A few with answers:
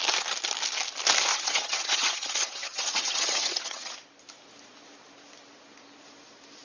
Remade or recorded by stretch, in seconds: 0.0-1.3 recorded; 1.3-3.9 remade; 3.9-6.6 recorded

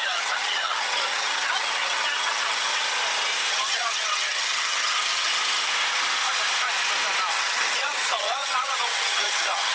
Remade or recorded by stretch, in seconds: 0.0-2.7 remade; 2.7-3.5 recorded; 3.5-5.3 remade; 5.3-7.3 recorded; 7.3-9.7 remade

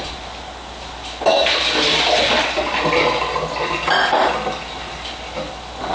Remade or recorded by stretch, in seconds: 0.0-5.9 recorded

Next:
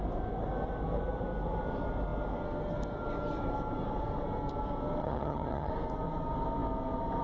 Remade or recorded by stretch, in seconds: 0.0-5.0 recorded; 5.0-5.7 remade; 5.7-7.2 recorded

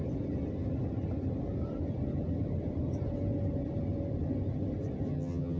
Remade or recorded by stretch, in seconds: 0.0-5.1 recorded; 5.1-5.6 remade

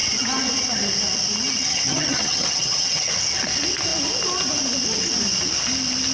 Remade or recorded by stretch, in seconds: 0.0-1.7 recorded; 1.7-3.1 remade; 3.1-6.1 recorded

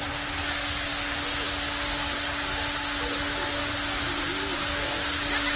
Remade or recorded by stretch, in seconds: 0.0-5.6 recorded